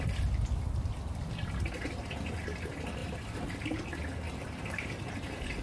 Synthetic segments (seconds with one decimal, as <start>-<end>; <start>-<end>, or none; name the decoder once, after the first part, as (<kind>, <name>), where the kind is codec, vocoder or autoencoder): 3.0-3.6 (vocoder, BigVGAN v2); 4.4-5.1